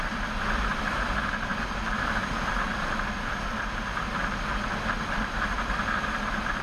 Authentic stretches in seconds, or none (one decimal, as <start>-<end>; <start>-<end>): 4.2-5.2